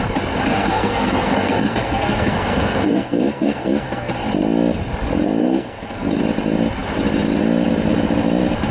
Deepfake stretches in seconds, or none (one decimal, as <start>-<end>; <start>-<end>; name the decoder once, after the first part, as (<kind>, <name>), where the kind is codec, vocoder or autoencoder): 0.5-4.1 (codec, SNAC); 5.4-6.2